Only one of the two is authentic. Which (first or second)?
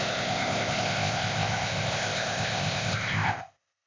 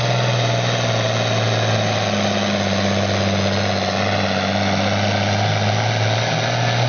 second